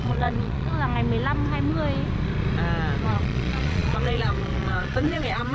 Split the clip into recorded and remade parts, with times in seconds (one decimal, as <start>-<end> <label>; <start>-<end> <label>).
0.0-0.7 remade; 0.7-3.0 recorded; 3.0-5.5 remade